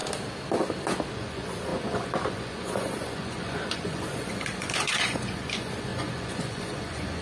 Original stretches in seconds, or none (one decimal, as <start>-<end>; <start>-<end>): 0.0-1.1